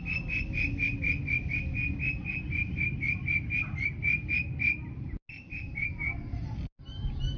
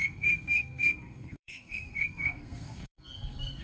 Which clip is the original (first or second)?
first